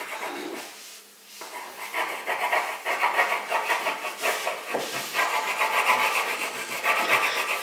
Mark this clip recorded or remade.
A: recorded